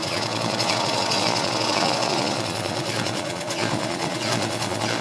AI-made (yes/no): yes